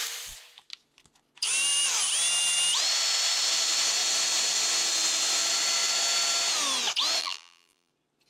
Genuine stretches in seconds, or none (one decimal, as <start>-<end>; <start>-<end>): 0.0-7.2; 7.9-8.3